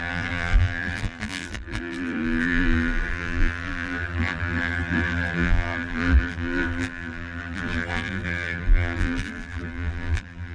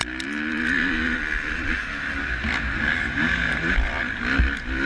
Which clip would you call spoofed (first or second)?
first